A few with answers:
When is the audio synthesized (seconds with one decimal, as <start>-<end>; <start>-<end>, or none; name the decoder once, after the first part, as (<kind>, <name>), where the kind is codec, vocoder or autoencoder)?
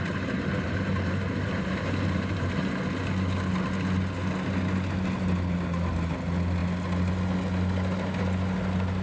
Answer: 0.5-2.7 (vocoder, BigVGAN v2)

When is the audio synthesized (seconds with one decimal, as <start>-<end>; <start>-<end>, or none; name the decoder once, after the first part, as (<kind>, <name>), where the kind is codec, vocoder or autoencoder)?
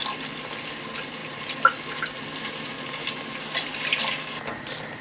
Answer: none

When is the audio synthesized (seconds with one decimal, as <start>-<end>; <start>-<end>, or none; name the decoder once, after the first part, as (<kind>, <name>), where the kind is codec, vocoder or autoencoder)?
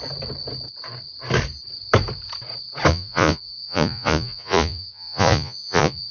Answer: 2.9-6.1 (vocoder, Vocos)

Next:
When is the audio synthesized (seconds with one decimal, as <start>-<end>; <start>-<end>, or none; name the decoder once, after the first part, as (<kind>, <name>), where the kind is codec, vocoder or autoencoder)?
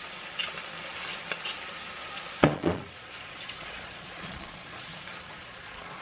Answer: 2.0-5.0 (vocoder, Vocos); 5.4-6.0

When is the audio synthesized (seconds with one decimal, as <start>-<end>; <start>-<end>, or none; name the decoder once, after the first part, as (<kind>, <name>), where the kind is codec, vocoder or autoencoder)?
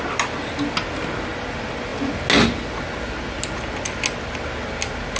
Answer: none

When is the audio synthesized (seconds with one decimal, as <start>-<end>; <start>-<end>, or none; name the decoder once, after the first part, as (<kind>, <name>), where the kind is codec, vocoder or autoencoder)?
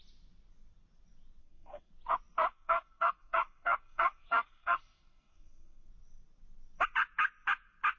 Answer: 1.4-1.9 (codec, SNAC); 2.5-5.9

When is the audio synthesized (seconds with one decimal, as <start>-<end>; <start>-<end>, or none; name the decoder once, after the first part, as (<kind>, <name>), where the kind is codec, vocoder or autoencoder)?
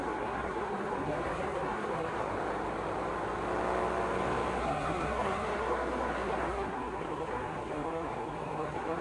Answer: 0.0-2.3 (codec, SNAC); 4.6-9.0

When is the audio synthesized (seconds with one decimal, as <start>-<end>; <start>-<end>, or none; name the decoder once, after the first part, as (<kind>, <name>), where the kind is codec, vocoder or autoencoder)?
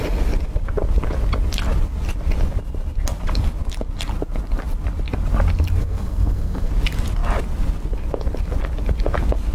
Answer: 5.8-6.7 (codec, SNAC)